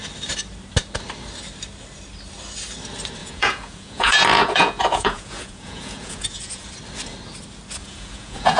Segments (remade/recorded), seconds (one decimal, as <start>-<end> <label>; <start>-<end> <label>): 0.0-3.2 recorded; 3.2-6.7 remade; 6.7-7.8 recorded; 7.8-8.6 remade